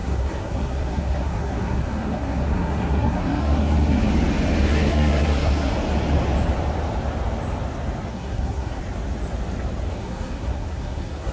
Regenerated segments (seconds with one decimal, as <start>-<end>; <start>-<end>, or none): 0.0-4.1; 4.7-5.7; 8.1-8.8; 9.9-11.3